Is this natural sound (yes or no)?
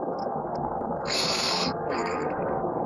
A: no